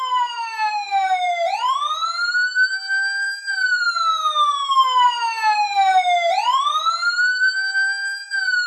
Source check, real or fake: fake